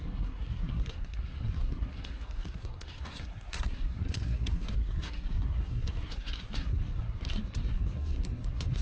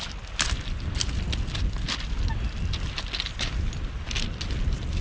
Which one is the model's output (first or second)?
first